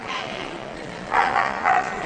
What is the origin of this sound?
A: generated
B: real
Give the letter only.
A